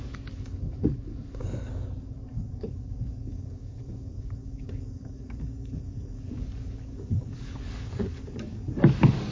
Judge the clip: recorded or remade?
remade